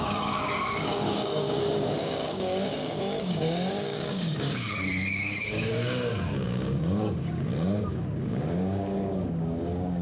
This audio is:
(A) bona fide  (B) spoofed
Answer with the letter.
B